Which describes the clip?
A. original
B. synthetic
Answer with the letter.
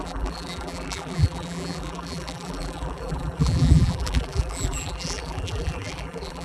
B